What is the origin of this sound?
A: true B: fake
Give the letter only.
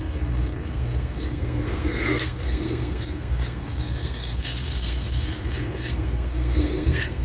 B